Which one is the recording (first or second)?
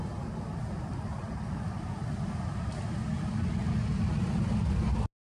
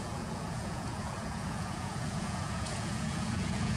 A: first